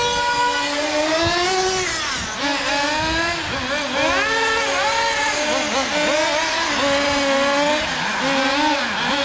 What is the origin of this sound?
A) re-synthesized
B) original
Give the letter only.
B